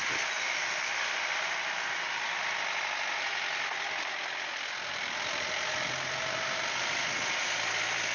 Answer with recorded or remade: recorded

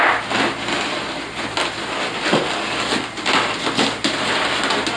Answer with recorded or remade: recorded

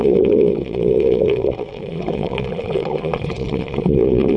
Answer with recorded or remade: remade